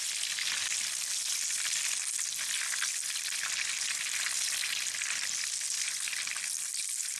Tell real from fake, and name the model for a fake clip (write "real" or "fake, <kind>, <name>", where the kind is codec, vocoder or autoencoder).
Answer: real